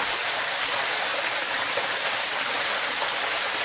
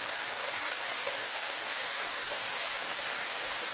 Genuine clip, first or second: first